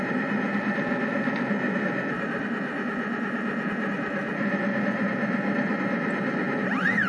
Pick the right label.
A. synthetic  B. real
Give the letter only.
B